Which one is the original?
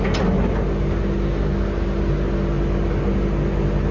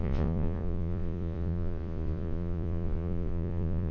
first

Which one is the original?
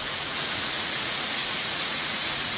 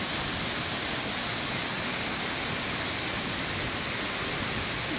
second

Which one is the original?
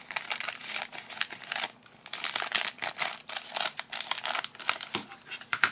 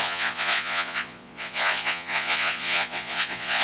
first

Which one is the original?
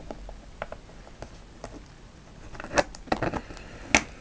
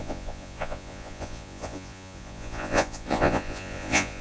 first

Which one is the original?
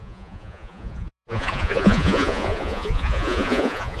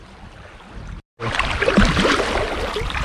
second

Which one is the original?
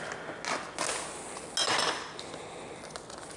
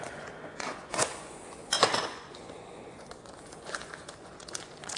first